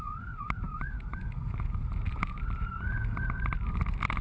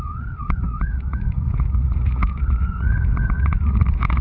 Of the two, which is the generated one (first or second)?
second